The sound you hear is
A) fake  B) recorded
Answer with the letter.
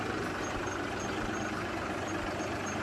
B